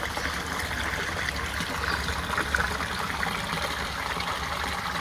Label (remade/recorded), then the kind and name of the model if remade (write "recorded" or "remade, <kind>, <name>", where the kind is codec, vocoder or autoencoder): recorded